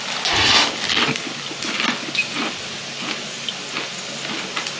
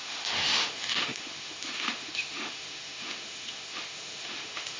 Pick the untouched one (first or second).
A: first